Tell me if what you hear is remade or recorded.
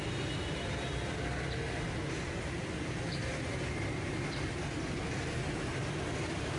recorded